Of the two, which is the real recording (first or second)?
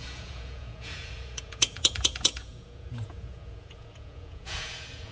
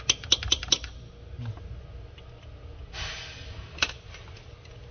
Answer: second